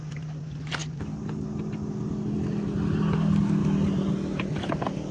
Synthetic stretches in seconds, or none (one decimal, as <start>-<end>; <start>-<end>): none